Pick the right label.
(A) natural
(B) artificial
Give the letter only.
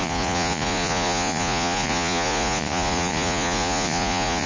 B